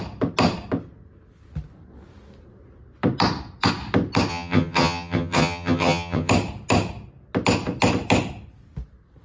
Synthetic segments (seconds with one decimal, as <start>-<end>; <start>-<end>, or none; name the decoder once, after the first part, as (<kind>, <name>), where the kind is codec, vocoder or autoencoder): 4.3-6.3 (vocoder, HiFi-GAN)